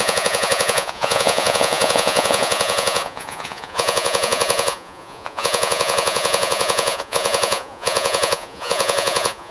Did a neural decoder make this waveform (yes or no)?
yes